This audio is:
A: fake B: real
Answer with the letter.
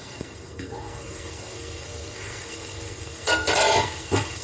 A